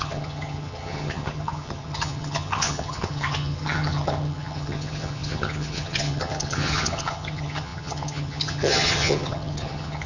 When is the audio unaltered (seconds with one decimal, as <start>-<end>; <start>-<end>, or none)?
none